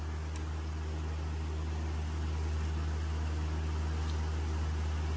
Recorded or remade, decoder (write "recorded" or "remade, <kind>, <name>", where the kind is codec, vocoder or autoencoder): recorded